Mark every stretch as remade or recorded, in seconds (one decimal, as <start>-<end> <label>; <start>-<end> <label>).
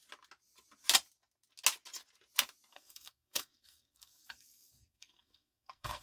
0.0-2.7 recorded; 2.7-6.0 remade